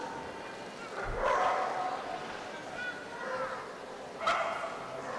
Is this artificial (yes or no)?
no